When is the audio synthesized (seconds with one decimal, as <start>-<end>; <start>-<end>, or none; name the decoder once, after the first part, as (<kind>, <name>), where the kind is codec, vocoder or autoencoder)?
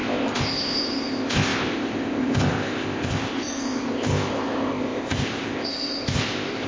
0.0-6.7 (codec, ZipCodec)